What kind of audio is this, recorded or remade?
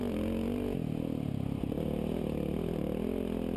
recorded